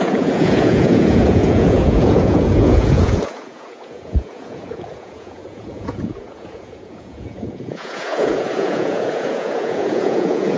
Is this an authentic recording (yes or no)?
no